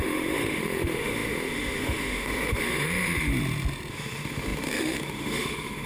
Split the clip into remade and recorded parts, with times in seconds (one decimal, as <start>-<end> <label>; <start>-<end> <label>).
0.0-3.3 remade; 3.3-3.9 recorded; 3.9-5.9 remade